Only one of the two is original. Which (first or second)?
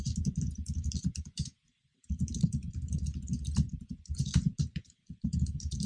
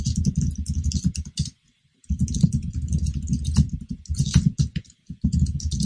second